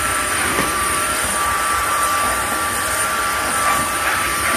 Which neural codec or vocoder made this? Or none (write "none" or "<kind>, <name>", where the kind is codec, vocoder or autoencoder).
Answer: vocoder, BigVGAN v2